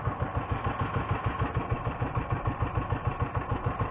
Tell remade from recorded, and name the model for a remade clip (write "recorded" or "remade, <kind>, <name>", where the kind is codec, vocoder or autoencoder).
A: recorded